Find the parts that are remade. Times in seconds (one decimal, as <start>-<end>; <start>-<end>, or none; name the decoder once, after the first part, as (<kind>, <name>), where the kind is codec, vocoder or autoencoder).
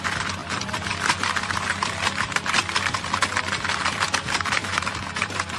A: 4.6-5.6 (vocoder, BigVGAN v2)